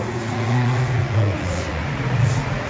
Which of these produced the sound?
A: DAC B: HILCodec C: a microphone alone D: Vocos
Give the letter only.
D